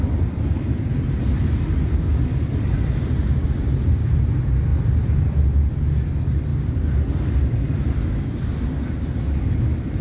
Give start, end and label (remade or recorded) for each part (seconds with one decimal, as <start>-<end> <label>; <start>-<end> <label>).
0.0-10.0 recorded